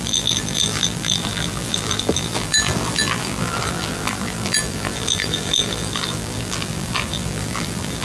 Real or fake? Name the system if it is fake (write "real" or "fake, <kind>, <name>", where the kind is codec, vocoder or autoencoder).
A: fake, vocoder, BigVGAN v2